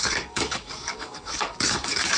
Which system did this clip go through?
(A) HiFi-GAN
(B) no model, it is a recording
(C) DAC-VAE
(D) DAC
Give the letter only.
D